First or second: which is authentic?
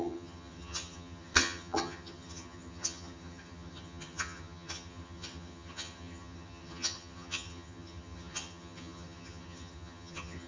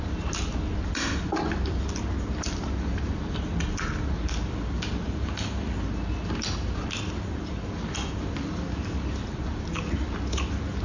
second